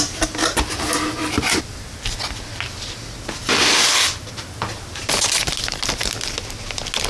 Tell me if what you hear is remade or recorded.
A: recorded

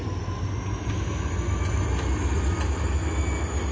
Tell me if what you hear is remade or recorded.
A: recorded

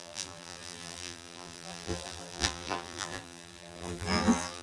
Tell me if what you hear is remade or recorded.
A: remade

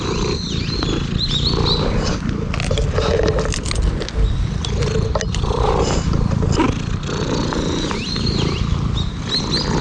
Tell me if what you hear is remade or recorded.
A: recorded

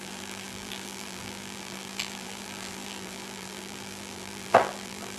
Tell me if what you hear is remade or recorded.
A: remade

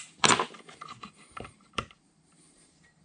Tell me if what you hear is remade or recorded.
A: remade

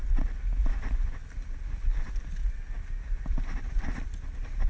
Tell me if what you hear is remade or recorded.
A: recorded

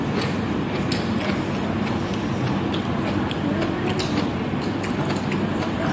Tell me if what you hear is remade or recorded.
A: recorded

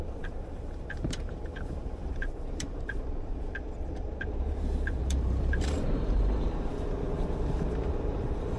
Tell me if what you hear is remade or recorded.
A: remade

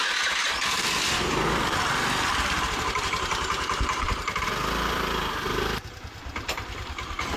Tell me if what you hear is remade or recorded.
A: remade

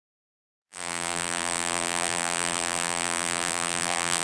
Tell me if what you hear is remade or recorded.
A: remade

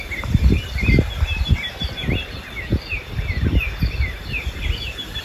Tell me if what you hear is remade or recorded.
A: recorded